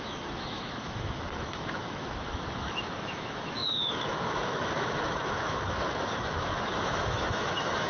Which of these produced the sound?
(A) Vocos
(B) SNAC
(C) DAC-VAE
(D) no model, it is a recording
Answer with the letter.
C